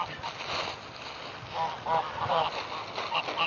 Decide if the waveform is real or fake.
real